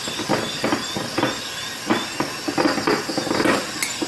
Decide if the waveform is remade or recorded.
recorded